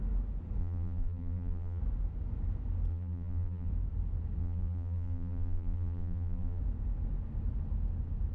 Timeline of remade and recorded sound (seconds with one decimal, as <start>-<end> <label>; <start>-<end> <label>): 0.0-0.6 recorded; 0.6-1.8 remade; 1.8-2.9 recorded; 2.9-3.7 remade; 3.7-4.4 recorded; 4.4-6.6 remade; 6.6-8.3 recorded